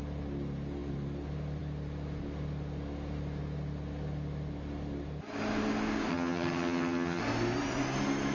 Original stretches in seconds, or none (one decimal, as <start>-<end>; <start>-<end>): 0.0-6.1; 7.2-8.3